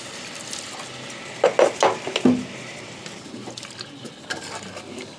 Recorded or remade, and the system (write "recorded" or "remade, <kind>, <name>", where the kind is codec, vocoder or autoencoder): recorded